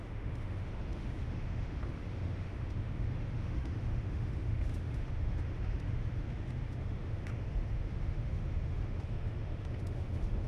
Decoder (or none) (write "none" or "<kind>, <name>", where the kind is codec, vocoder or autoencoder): autoencoder, DAC-VAE